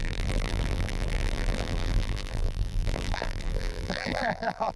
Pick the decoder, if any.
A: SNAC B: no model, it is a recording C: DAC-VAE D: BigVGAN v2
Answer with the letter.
D